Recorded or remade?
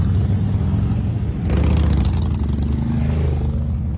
recorded